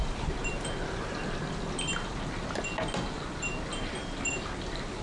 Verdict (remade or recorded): recorded